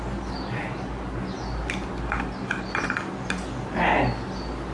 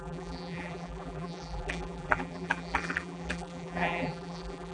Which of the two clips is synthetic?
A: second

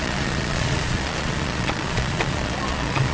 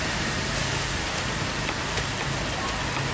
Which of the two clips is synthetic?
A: first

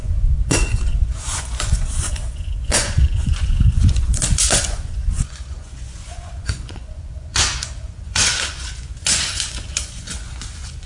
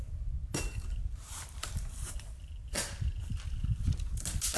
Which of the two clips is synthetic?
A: first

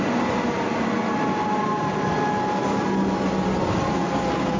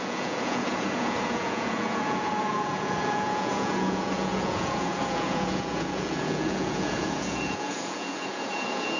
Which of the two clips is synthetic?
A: second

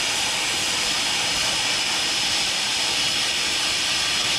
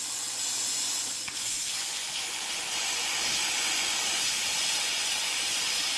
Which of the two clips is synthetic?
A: second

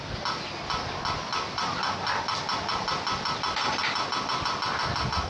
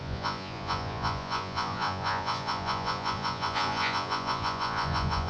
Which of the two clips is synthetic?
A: second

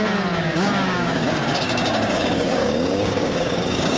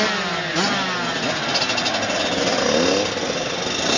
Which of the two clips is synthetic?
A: first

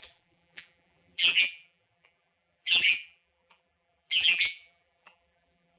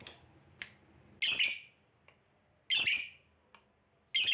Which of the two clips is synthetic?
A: first